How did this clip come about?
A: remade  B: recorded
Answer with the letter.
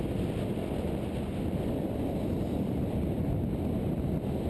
B